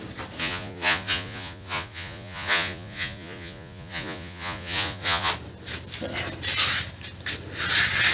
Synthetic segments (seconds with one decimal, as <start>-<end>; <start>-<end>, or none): 0.4-5.3